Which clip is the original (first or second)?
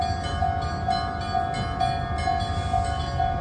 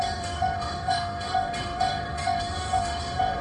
first